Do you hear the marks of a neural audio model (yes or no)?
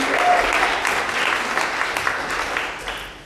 no